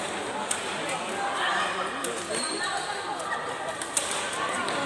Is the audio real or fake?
real